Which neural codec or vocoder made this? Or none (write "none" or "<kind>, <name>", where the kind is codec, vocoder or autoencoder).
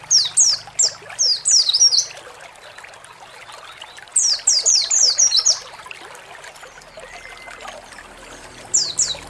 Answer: none